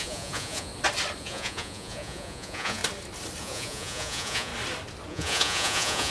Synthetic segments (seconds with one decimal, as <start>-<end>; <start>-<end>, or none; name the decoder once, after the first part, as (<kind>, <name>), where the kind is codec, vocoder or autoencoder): 0.0-0.7 (vocoder, Vocos); 1.2-2.8; 3.4-4.5; 5.1-6.1